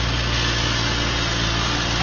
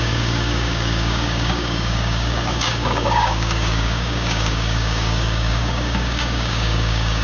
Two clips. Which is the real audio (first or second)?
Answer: first